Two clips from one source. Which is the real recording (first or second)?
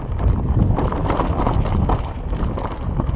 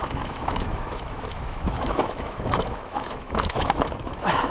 first